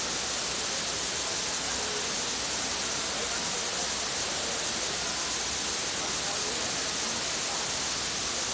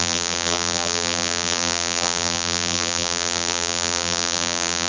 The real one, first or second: first